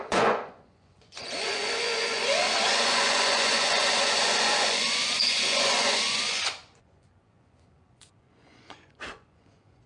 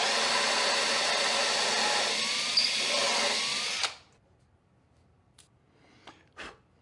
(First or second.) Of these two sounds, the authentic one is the second